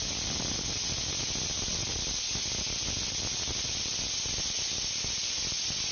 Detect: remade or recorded recorded